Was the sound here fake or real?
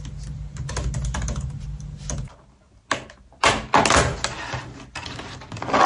real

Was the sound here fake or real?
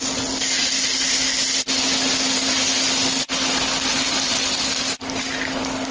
real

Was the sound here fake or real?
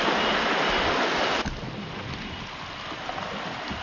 real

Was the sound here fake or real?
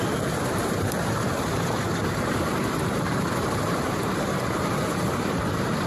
fake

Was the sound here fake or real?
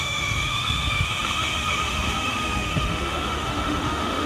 fake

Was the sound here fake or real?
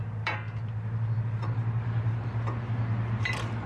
real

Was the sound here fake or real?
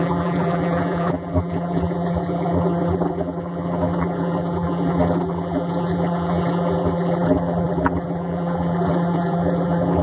fake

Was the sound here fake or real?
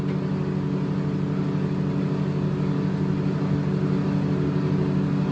real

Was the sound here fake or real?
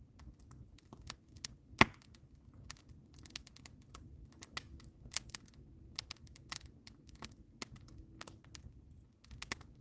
real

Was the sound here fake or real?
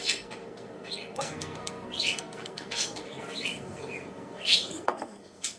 fake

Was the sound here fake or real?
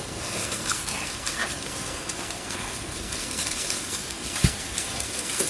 fake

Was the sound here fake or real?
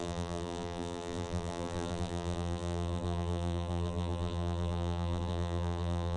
fake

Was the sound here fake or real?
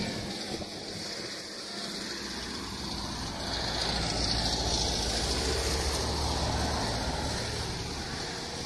real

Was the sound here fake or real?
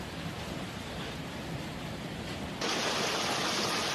fake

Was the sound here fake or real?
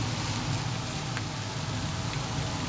real